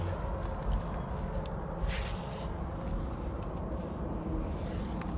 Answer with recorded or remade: recorded